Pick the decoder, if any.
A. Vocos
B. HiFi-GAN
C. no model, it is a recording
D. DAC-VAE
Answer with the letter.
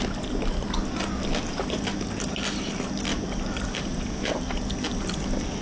C